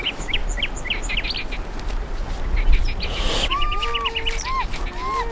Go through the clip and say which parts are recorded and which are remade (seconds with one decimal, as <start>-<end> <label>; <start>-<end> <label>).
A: 0.0-0.4 remade; 0.4-3.5 recorded; 3.5-3.9 remade; 3.9-5.3 recorded